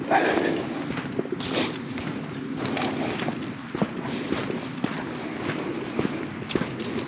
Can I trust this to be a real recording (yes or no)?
yes